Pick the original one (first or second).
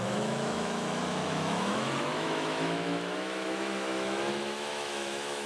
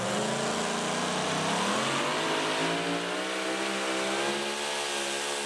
second